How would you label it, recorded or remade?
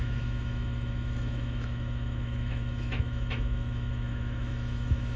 remade